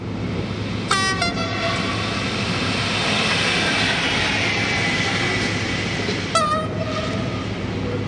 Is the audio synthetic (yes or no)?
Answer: no